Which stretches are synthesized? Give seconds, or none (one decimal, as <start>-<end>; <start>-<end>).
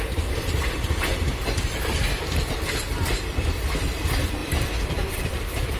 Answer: 4.4-5.2